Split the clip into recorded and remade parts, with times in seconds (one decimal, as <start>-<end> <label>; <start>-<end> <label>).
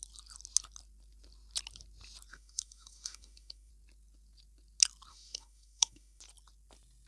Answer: 0.0-2.3 recorded; 2.3-3.7 remade; 3.7-5.1 recorded; 5.1-6.2 remade; 6.2-7.1 recorded